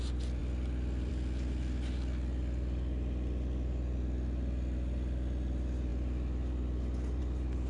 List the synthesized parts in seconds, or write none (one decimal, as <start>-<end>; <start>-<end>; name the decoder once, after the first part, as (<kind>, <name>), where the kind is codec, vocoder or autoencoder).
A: none